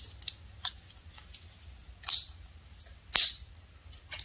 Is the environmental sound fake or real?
real